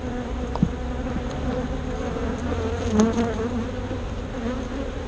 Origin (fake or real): real